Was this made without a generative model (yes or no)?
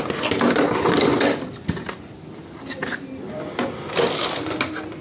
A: yes